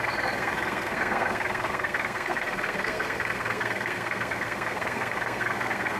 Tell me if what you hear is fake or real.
fake